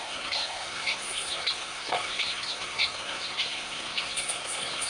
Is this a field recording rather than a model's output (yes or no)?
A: no